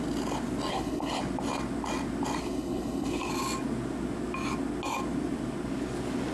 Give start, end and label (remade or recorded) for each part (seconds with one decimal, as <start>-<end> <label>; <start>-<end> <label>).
0.0-0.7 recorded; 0.7-1.2 remade; 1.2-2.4 recorded; 2.4-3.3 remade; 3.3-6.3 recorded